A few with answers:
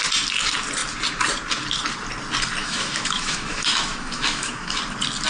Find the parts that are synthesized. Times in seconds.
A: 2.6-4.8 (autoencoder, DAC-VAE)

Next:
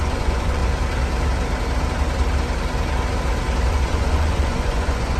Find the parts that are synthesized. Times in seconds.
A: 0.0-0.6 (vocoder, Vocos); 3.7-5.2

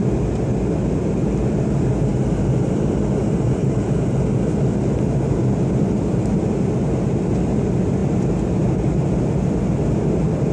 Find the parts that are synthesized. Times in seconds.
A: none

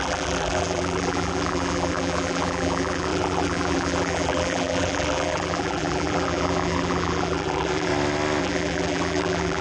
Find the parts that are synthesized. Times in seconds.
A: 0.0-7.9 (vocoder, BigVGAN v2); 8.4-9.6

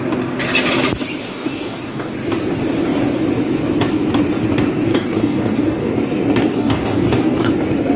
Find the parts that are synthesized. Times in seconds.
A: 1.2-2.1 (codec, DAC); 4.9-5.9; 6.4-7.5